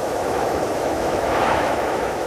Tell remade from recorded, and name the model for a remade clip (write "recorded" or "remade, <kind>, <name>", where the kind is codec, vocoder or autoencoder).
remade, autoencoder, DAC-VAE